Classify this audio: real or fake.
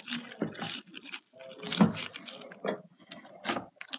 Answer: real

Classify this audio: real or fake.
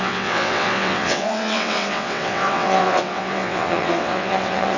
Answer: fake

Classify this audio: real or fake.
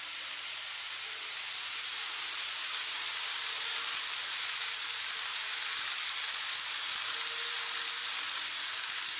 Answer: real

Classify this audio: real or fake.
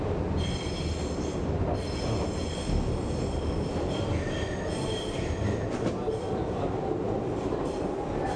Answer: real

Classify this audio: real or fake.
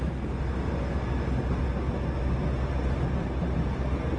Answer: real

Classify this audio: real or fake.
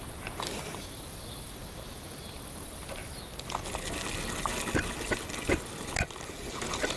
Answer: real